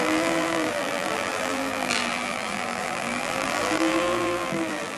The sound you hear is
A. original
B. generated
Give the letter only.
B